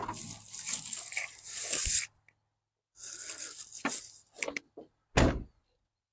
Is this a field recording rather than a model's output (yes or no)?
yes